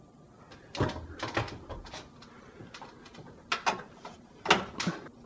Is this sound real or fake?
real